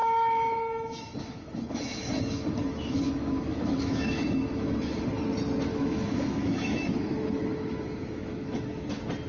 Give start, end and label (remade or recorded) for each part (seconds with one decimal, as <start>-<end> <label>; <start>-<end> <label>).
0.0-5.0 remade; 5.0-5.7 recorded; 5.7-8.9 remade; 8.9-9.3 recorded